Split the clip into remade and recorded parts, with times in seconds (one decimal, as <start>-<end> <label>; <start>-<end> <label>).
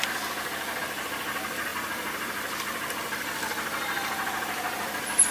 0.0-5.3 recorded